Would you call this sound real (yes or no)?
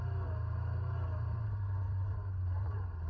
yes